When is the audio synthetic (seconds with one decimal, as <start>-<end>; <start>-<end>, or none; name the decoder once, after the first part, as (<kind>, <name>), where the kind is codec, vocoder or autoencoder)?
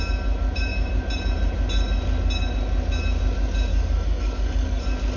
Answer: 3.7-4.8 (codec, DAC)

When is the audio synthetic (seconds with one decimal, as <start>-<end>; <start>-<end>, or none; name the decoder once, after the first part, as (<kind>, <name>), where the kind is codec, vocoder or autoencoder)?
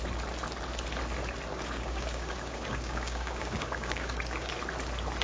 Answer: 1.5-4.5 (codec, DAC)